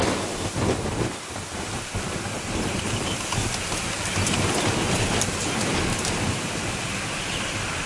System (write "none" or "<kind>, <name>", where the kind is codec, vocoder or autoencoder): vocoder, BigVGAN v2